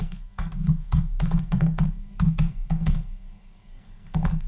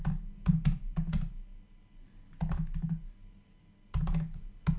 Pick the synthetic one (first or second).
first